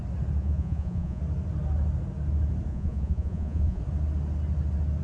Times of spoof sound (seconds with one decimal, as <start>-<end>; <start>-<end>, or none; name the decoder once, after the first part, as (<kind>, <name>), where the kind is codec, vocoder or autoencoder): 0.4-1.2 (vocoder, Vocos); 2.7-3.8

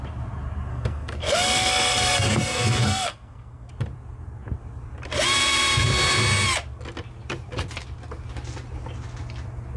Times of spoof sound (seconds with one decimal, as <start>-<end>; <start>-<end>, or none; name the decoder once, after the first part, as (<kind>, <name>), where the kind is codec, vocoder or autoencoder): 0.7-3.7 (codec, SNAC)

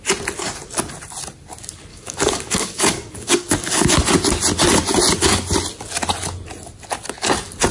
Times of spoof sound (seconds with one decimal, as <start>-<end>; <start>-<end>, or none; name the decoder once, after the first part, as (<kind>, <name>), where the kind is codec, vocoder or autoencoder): 1.9-3.9 (codec, DAC)

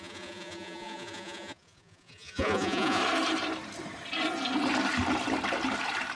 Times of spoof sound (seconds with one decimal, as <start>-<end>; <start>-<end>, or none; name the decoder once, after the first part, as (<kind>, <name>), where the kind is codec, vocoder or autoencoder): 0.0-3.0 (vocoder, Vocos)

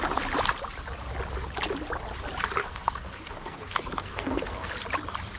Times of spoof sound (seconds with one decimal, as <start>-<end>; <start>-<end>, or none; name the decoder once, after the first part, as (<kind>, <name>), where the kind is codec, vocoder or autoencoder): 2.6-4.7 (codec, SNAC)